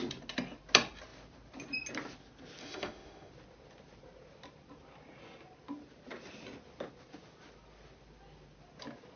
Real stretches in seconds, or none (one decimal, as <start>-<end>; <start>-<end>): 0.0-2.6; 3.3-9.2